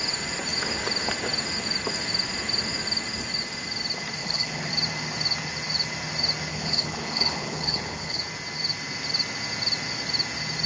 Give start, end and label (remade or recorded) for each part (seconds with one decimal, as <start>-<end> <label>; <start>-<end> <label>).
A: 0.0-4.2 recorded; 4.2-4.7 remade; 4.7-6.5 recorded; 6.5-8.2 remade; 8.2-10.7 recorded